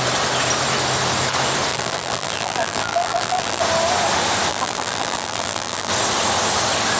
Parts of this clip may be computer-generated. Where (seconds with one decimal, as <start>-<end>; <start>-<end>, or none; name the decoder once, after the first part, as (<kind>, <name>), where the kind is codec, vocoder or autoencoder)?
1.7-3.6 (vocoder, BigVGAN v2); 4.5-5.9